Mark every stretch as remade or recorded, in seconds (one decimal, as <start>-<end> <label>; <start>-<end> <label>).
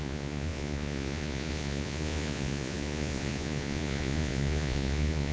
0.0-5.3 remade